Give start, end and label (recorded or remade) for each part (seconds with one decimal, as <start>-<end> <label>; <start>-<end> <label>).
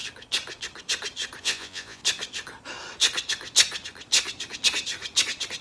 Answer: 0.0-1.4 recorded; 1.4-2.0 remade; 2.0-5.6 recorded